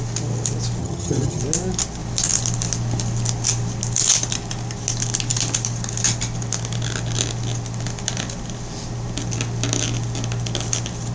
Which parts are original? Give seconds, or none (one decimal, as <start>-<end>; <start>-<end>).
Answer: 0.0-0.8; 1.4-11.1

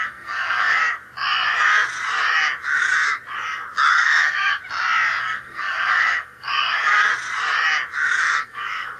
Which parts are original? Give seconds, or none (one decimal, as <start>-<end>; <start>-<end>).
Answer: 0.8-3.9; 4.6-5.2; 7.1-8.2

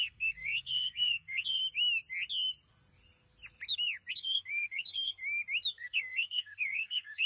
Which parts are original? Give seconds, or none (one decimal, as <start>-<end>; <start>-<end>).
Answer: 1.6-4.1; 5.2-5.7

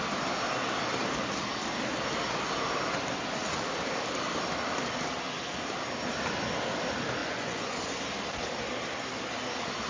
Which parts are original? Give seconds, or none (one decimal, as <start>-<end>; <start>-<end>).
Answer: 0.0-7.2; 8.0-9.9

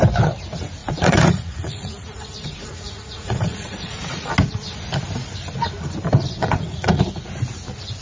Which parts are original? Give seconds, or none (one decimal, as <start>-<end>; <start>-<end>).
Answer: 0.0-0.8; 4.3-6.4; 7.0-8.0

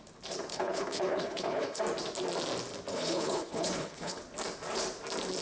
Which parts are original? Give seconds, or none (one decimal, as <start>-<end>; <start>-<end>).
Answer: 0.0-0.5; 1.8-2.9; 4.2-5.4